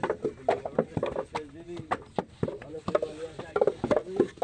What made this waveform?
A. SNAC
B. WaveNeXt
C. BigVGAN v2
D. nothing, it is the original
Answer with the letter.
D